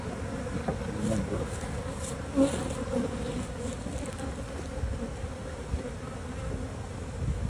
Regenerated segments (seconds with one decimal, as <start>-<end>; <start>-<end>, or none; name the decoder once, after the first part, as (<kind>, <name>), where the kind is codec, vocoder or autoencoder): none